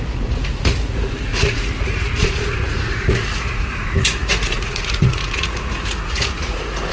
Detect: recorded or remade remade